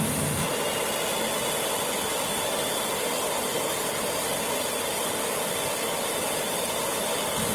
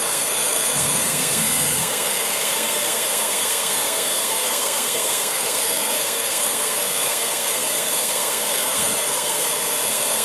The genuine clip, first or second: first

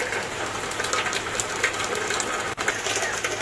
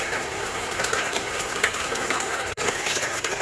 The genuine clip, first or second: first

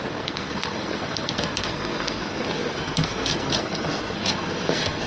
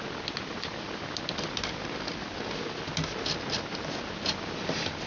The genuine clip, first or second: second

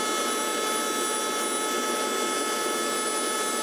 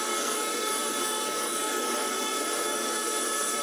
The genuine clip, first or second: first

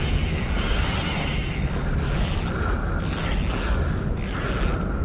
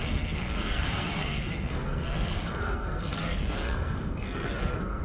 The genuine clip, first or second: first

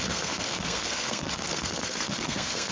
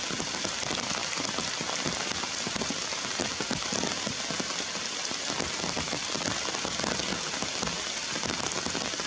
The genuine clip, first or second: second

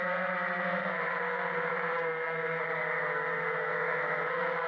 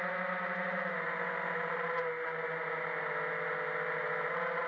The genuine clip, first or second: second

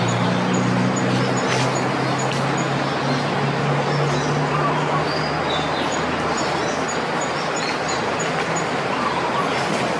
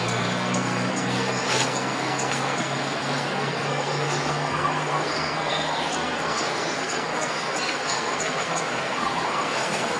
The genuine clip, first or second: first